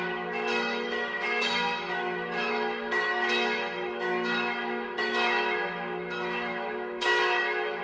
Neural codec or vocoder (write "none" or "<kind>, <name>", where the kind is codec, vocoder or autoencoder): autoencoder, DAC-VAE